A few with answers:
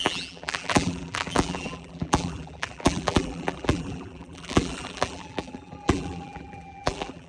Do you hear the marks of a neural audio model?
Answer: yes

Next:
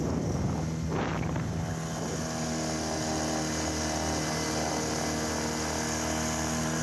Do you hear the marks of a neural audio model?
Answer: no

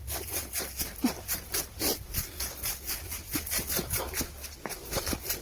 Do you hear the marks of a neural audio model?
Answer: yes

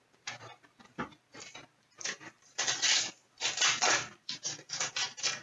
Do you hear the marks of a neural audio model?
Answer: yes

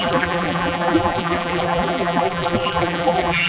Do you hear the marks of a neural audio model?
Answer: yes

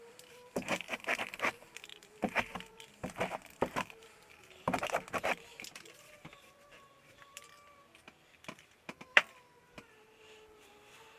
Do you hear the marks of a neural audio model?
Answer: yes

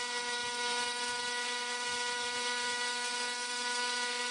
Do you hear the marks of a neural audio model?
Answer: no